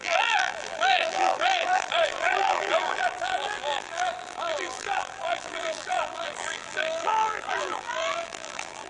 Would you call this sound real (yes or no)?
no